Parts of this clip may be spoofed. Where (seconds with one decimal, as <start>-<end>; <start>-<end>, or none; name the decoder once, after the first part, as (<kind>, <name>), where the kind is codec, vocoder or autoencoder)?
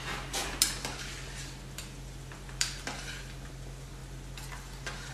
none